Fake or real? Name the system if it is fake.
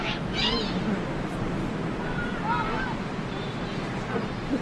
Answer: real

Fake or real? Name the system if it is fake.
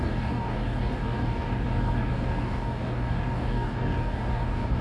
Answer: fake, codec, DAC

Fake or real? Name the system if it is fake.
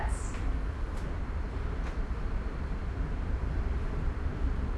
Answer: real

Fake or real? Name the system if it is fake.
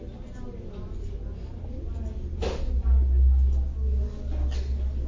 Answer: real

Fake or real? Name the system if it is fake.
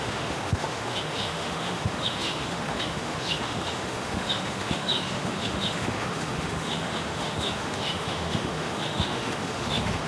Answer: fake, autoencoder, DAC-VAE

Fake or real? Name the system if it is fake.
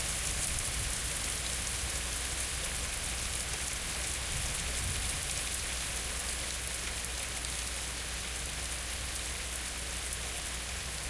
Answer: real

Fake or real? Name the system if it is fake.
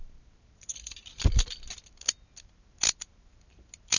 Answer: real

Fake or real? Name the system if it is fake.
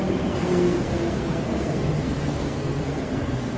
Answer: fake, codec, SNAC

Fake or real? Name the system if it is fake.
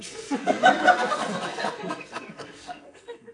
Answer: fake, codec, SNAC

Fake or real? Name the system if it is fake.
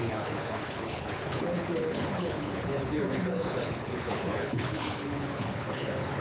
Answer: fake, codec, HILCodec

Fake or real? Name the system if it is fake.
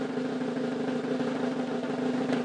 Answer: real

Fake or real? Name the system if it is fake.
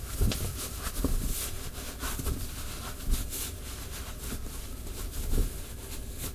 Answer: real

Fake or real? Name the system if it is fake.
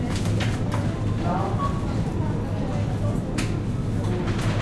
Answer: real